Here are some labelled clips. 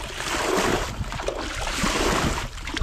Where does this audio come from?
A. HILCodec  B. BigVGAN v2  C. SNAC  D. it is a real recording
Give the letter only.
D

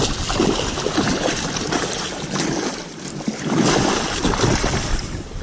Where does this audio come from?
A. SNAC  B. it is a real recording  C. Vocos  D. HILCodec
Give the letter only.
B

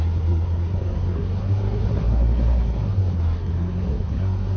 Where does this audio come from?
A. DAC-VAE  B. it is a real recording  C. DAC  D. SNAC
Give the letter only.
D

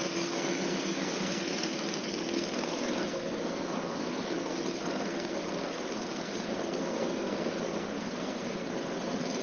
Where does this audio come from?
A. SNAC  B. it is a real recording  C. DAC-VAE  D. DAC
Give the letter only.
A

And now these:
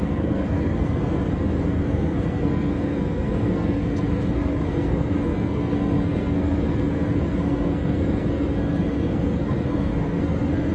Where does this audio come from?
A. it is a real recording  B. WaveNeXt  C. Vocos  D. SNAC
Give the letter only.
D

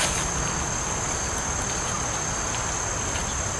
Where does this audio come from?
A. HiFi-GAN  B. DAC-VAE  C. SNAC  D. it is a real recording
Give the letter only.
D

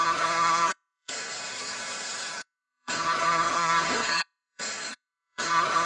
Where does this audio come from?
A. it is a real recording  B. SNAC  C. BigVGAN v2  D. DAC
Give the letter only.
B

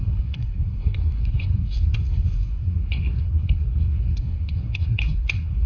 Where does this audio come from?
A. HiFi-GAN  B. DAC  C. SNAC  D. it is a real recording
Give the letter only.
C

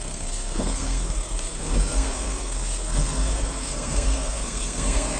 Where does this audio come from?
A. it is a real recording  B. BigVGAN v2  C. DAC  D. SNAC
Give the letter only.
D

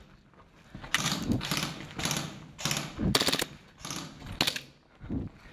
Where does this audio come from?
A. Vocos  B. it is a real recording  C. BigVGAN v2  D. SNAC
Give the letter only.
B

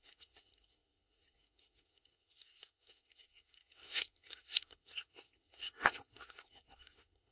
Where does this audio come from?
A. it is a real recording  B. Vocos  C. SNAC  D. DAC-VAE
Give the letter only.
C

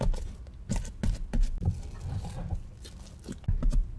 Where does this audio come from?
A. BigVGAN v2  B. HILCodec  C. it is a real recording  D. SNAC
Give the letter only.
C